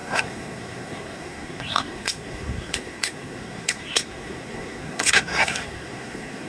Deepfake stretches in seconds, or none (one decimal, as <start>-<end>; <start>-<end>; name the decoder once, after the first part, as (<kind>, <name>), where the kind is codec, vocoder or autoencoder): 0.0-6.5 (codec, SNAC)